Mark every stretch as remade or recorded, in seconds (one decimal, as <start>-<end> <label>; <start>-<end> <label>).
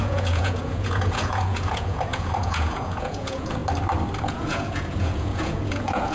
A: 0.0-3.6 remade; 3.6-4.2 recorded; 4.2-6.1 remade